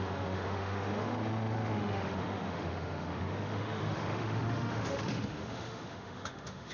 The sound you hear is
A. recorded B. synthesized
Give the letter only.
B